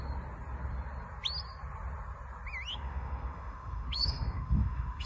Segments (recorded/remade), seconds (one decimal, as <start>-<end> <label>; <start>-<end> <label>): 0.0-2.7 recorded; 2.7-5.1 remade